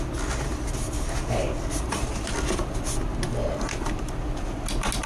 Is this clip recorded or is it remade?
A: recorded